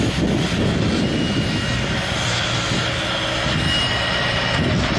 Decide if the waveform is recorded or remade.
recorded